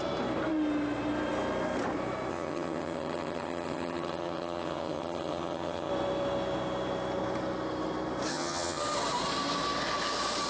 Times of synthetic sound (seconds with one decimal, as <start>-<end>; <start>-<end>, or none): 2.3-5.9; 8.3-8.8